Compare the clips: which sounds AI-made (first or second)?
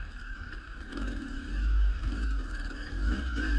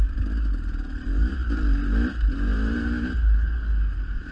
first